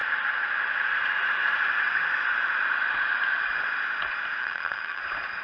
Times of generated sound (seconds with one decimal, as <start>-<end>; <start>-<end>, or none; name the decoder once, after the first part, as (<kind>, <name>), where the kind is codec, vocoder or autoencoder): 4.4-5.0 (vocoder, HiFi-GAN)